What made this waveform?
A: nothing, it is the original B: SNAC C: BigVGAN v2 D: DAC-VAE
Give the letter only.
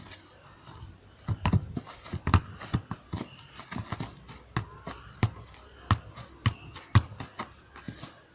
A